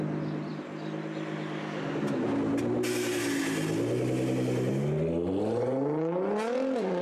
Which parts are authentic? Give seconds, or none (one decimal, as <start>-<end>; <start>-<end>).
0.0-7.0